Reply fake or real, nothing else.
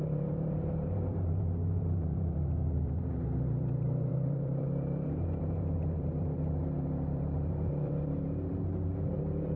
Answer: fake